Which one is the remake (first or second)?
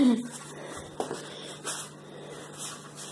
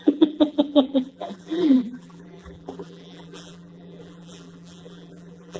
second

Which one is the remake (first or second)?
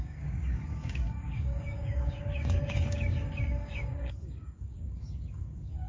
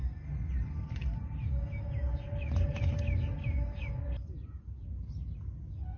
first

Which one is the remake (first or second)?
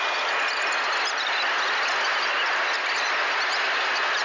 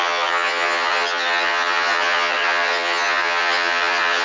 second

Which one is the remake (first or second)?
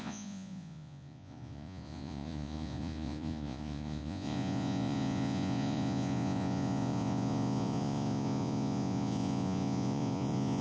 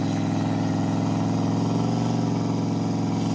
first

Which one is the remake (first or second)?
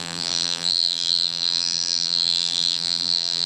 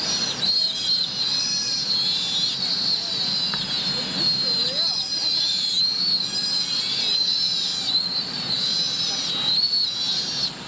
first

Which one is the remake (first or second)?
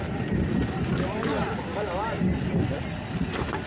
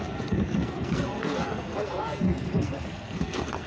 second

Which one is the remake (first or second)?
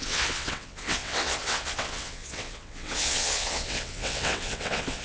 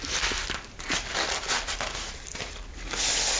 first